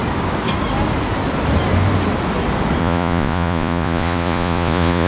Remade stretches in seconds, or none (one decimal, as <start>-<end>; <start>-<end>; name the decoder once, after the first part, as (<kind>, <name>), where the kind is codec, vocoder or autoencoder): 2.8-5.1 (vocoder, Vocos)